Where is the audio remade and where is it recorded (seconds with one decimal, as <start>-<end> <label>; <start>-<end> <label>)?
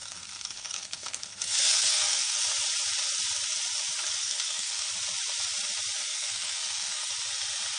0.0-2.4 remade; 2.4-4.2 recorded; 4.2-4.9 remade; 4.9-6.1 recorded; 6.1-7.1 remade; 7.1-7.8 recorded